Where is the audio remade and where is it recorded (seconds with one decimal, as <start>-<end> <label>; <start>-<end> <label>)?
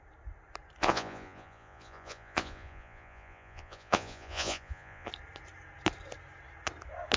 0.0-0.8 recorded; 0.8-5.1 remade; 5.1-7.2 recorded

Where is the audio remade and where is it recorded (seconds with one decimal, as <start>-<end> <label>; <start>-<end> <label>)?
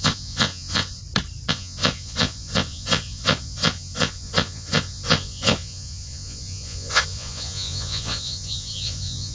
0.0-1.0 remade; 1.0-1.5 recorded; 1.5-9.3 remade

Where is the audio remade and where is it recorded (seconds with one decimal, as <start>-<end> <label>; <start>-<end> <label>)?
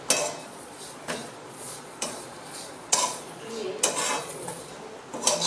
0.0-0.4 recorded; 0.4-3.5 remade; 3.5-4.2 recorded; 4.2-4.7 remade; 4.7-5.5 recorded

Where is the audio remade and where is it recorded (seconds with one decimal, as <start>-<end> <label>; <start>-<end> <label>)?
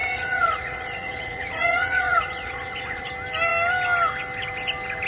0.0-3.1 remade; 3.1-5.1 recorded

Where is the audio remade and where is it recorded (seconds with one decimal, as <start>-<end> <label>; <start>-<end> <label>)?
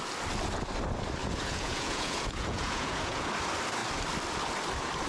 0.0-1.2 recorded; 1.2-3.3 remade; 3.3-5.1 recorded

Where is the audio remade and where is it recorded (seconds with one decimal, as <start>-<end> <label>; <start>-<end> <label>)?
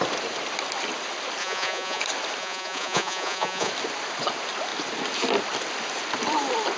0.0-1.4 recorded; 1.4-2.0 remade; 2.0-2.4 recorded; 2.4-3.7 remade; 3.7-6.8 recorded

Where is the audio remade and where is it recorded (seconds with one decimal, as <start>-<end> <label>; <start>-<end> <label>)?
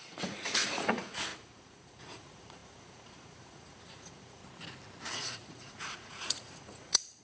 0.0-4.4 remade; 4.4-5.1 recorded; 5.1-7.2 remade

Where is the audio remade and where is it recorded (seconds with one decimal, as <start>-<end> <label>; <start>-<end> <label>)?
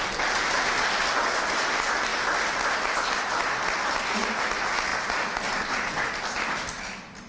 0.0-7.3 recorded